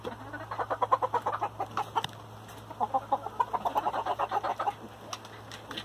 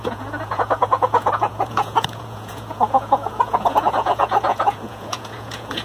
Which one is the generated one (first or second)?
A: second